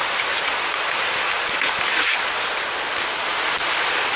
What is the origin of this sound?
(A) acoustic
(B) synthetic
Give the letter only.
A